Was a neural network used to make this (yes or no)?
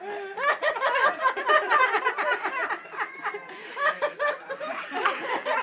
no